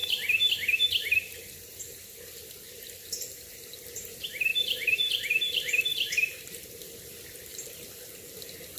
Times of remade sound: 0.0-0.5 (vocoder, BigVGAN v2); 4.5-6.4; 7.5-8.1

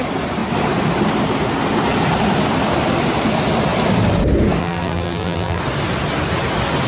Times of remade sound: 4.6-5.6 (vocoder, BigVGAN v2)

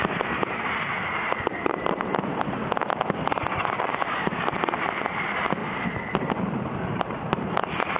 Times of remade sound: 0.0-0.4 (vocoder, BigVGAN v2); 3.8-5.6; 6.2-8.0

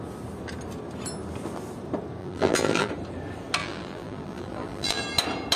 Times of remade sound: 2.2-2.9 (vocoder, BigVGAN v2); 3.6-5.0

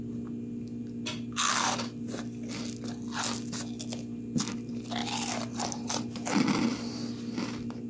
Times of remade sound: 5.0-5.9 (vocoder, BigVGAN v2)